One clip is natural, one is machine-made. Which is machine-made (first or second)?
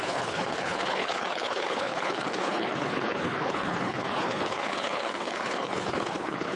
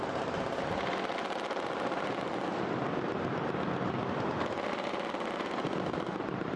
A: first